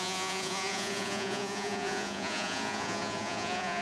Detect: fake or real fake